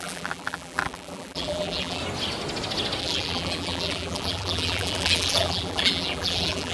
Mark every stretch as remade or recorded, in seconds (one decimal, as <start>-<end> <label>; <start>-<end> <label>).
0.0-2.0 remade; 2.0-3.0 recorded; 3.0-6.7 remade